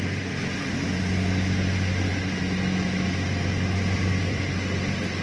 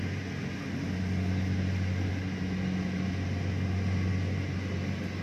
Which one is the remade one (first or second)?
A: first